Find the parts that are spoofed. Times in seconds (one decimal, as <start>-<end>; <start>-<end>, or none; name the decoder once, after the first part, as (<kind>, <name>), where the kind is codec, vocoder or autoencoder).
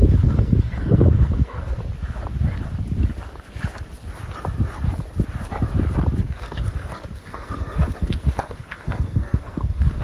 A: 0.0-1.8 (codec, SNAC); 6.2-10.0